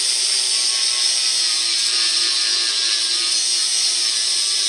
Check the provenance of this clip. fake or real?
real